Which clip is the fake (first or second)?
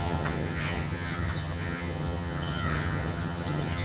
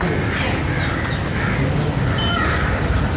first